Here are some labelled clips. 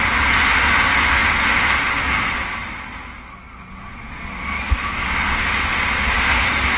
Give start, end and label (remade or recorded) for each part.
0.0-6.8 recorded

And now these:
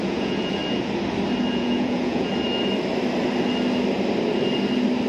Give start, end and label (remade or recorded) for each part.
0.0-0.6 remade; 0.6-1.5 recorded; 1.5-2.3 remade; 2.3-5.1 recorded